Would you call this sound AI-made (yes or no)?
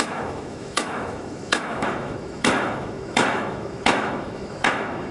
yes